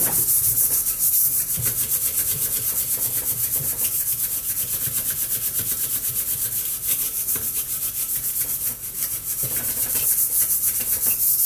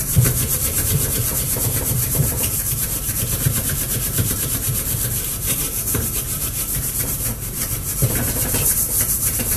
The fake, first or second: second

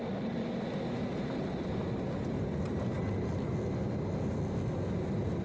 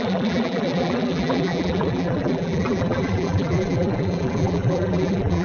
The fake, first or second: second